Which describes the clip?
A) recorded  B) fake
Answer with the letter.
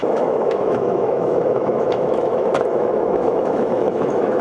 B